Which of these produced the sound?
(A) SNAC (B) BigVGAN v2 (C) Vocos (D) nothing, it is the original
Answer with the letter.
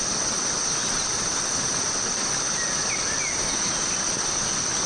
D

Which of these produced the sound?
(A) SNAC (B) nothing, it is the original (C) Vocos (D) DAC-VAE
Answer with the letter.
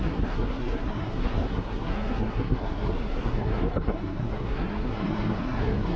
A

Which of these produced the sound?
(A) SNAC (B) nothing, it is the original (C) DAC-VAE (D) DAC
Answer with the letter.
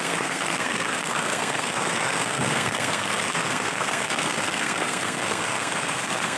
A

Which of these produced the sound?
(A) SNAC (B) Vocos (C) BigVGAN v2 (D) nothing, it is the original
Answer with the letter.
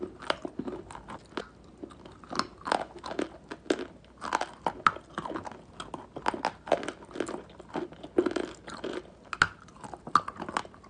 D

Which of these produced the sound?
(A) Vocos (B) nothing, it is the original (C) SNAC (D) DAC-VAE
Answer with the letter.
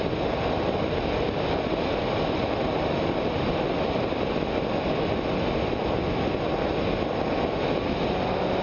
B